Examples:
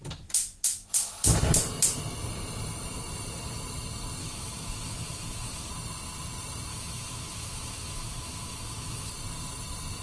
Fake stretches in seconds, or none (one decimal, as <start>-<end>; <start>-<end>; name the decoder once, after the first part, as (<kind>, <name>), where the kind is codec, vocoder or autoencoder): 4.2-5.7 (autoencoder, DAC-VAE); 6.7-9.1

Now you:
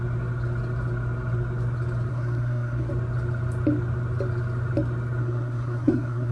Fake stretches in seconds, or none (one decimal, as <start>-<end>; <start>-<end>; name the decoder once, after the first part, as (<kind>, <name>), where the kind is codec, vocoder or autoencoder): 2.1-2.9 (codec, SNAC); 5.2-6.3

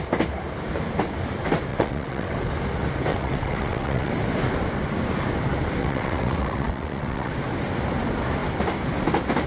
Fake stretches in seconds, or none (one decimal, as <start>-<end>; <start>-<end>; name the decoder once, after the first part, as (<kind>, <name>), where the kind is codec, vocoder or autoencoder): 1.7-2.3 (vocoder, WaveNeXt); 3.1-4.1; 5.8-7.3

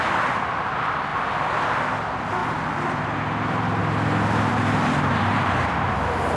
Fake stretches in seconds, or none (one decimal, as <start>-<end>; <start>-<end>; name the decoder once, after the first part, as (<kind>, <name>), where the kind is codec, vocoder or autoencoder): 2.4-3.8 (vocoder, BigVGAN v2); 4.5-6.4

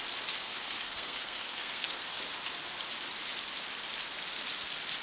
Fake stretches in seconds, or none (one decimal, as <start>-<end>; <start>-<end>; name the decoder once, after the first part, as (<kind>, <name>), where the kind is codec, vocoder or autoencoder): 0.4-2.2 (codec, SNAC)

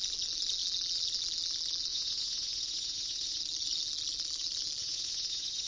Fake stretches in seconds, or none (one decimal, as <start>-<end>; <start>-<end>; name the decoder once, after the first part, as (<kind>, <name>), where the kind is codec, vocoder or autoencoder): 1.9-3.4 (vocoder, Vocos); 4.8-5.7

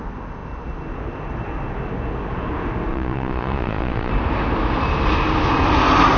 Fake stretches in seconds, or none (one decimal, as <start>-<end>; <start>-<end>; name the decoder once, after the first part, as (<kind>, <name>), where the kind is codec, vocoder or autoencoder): 2.9-4.1 (vocoder, Vocos)